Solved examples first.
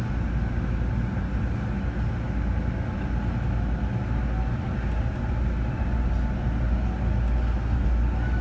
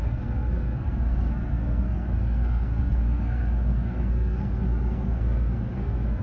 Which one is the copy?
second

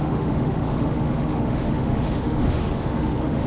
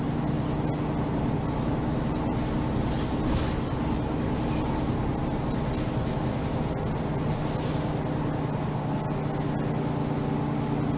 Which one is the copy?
first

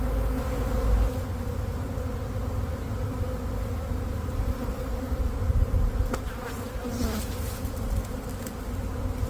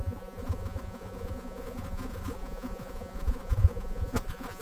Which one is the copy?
second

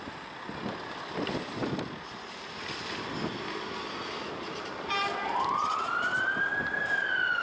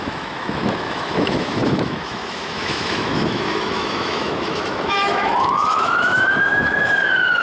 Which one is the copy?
second